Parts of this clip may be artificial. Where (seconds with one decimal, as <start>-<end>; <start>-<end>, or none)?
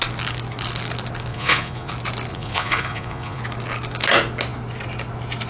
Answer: 1.3-1.9; 2.3-3.4